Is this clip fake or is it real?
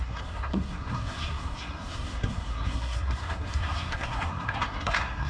fake